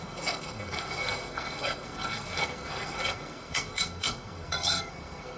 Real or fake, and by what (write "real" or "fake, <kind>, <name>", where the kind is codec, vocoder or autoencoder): fake, codec, SNAC